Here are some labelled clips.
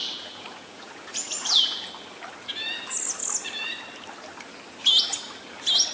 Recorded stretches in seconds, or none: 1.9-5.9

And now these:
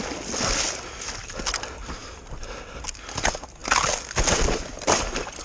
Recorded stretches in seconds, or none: 0.0-5.4